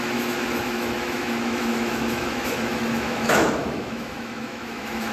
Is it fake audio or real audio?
fake